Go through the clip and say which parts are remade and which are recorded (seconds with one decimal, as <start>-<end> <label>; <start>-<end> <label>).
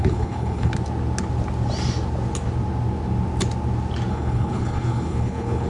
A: 0.0-0.7 remade; 0.7-4.1 recorded; 4.1-5.7 remade